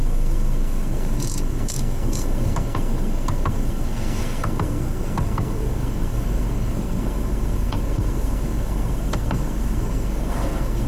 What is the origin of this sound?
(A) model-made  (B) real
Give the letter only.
A